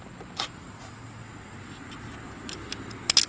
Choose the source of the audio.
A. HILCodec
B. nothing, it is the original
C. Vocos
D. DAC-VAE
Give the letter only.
B